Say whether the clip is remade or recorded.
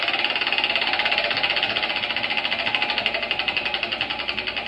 recorded